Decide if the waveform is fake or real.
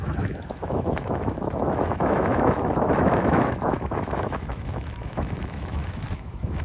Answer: fake